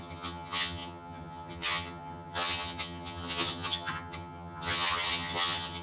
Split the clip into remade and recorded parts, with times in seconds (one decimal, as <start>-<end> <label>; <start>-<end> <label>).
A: 0.0-5.8 remade